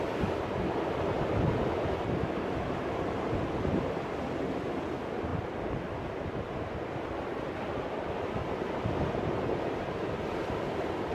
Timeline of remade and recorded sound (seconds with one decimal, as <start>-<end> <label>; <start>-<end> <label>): 0.0-11.1 recorded